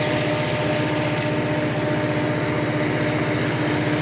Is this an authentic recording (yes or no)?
yes